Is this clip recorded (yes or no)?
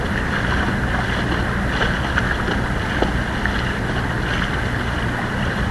yes